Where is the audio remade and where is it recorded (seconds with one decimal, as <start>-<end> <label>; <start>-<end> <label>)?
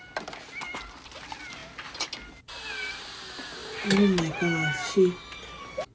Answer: 0.0-5.9 recorded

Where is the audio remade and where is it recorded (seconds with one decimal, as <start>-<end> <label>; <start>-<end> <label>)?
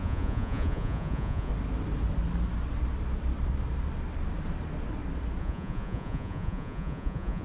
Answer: 0.0-1.5 remade; 1.5-5.4 recorded; 5.4-7.4 remade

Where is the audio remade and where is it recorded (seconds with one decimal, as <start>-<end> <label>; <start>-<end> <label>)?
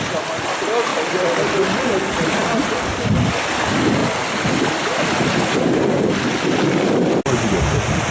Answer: 0.0-8.1 recorded